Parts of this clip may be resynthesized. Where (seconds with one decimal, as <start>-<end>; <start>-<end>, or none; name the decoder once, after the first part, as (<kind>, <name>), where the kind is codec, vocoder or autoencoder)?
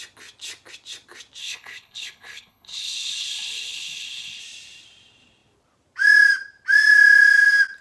1.4-4.4 (codec, HILCodec)